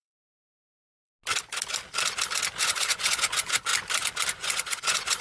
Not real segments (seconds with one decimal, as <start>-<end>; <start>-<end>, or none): 0.0-1.1; 2.6-3.7; 4.3-5.2